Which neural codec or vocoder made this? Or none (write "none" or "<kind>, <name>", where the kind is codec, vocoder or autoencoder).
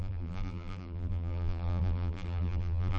vocoder, BigVGAN v2